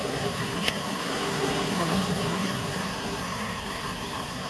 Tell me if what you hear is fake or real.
fake